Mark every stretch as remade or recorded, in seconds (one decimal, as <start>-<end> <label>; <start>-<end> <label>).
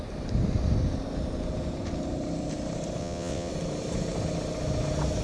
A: 0.0-3.0 recorded; 3.0-3.5 remade; 3.5-5.2 recorded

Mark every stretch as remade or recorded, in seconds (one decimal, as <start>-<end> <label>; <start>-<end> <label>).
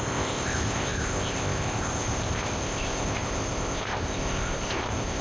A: 0.0-5.2 remade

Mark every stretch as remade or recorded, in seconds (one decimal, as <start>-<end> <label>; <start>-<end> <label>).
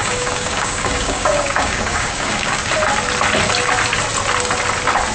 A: 0.0-2.7 remade; 2.7-5.1 recorded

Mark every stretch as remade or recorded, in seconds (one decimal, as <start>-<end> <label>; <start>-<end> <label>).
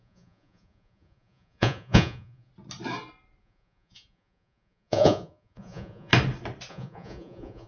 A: 0.0-2.5 remade; 2.5-3.4 recorded; 3.4-6.1 remade; 6.1-6.7 recorded; 6.7-7.7 remade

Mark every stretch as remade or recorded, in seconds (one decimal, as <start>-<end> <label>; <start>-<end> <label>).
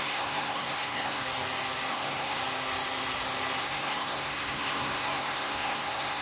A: 0.0-1.2 remade; 1.2-1.9 recorded; 1.9-2.4 remade; 2.4-3.6 recorded; 3.6-6.2 remade